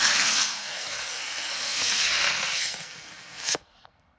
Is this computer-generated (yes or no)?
yes